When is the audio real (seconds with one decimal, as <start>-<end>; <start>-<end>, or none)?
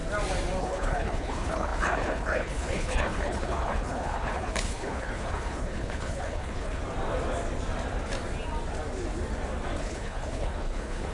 0.0-0.6; 6.8-9.8